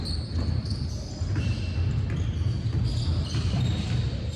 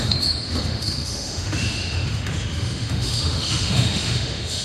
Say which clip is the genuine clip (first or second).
first